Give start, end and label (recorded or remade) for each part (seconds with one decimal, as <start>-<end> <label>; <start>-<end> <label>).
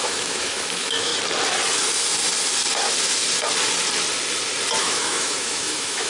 0.0-1.1 remade; 1.1-4.8 recorded; 4.8-6.1 remade